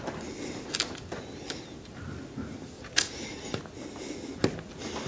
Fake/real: real